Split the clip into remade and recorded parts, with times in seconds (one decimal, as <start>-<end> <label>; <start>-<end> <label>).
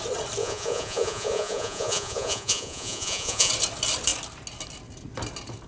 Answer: 0.0-0.4 recorded; 0.4-3.5 remade; 3.5-5.7 recorded